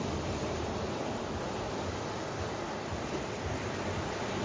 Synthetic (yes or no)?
no